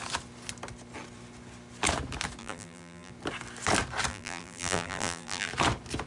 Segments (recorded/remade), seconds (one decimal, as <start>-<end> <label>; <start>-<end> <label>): 0.0-2.4 recorded; 2.4-3.1 remade; 3.1-4.1 recorded; 4.1-5.5 remade; 5.5-6.1 recorded